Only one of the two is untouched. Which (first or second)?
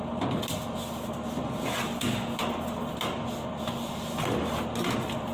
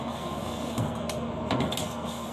first